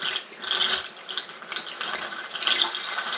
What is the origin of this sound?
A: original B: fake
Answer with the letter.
A